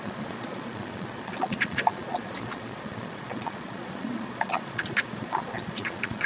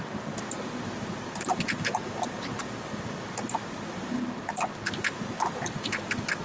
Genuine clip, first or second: second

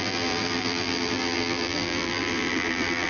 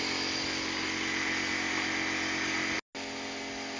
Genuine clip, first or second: second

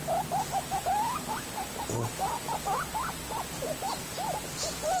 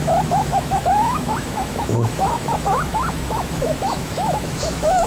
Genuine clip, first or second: first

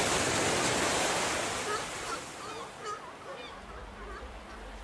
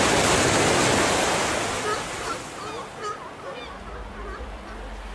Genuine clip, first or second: second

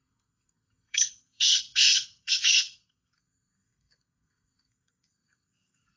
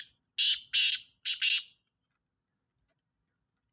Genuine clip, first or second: second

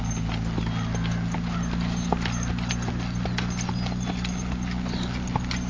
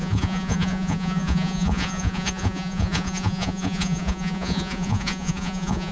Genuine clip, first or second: first